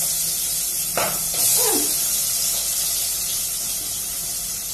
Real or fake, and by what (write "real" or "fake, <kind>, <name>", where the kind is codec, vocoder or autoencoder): real